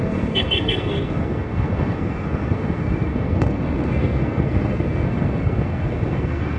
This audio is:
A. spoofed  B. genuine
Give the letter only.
A